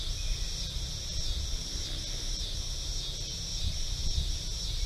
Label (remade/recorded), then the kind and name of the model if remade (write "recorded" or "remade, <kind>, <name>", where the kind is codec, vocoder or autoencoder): recorded